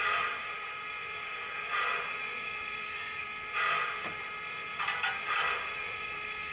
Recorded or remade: remade